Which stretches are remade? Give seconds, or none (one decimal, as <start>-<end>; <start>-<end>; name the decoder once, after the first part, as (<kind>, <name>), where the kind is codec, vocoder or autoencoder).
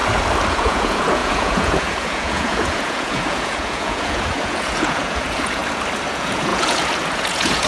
0.5-5.6 (vocoder, Vocos); 6.1-7.7